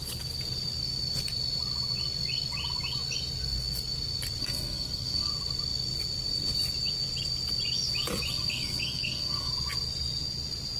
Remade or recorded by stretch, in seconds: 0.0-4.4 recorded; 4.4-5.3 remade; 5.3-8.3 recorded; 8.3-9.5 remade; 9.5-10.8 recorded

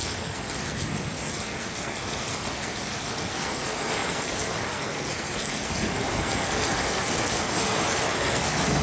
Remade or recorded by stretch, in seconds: 0.0-8.8 remade

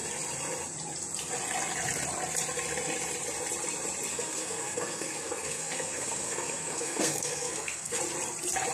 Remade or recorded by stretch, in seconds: 0.0-4.1 recorded; 4.1-8.0 remade; 8.0-8.7 recorded

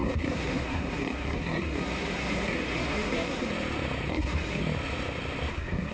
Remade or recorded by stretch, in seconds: 0.0-3.5 remade; 3.5-4.1 recorded; 4.1-4.6 remade; 4.6-5.5 recorded; 5.5-5.9 remade

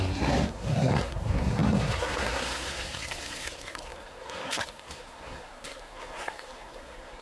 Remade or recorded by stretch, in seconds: 0.0-7.2 remade

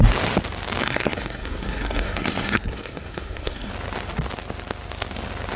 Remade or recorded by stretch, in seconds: 0.0-0.8 recorded; 0.8-3.7 remade; 3.7-5.6 recorded

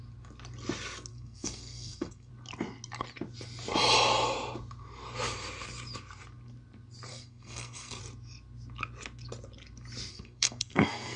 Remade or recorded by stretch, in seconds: 0.0-1.1 recorded; 1.1-2.3 remade; 2.3-7.1 recorded; 7.1-8.0 remade; 8.0-10.1 recorded; 10.1-11.2 remade